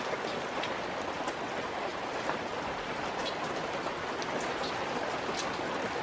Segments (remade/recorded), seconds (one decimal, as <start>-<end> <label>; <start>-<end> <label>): 0.0-1.9 recorded; 1.9-3.0 remade; 3.0-6.0 recorded